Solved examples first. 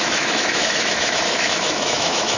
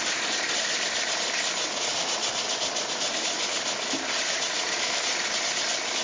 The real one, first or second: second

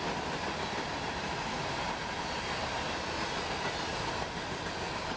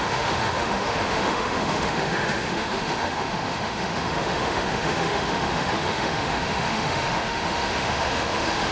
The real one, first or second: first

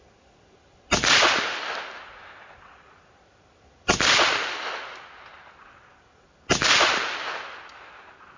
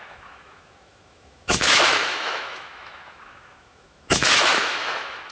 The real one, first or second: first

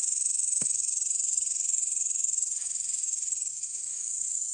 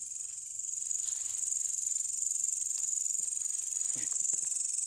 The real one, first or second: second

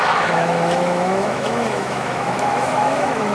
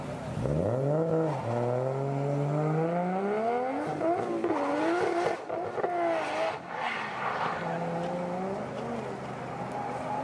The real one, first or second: second